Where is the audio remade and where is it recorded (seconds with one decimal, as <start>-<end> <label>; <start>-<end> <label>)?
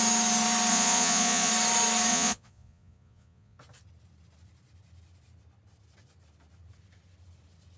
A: 0.0-0.7 recorded; 0.7-1.5 remade; 1.5-2.1 recorded; 2.1-3.6 remade; 3.6-7.8 recorded